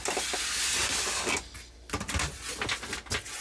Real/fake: real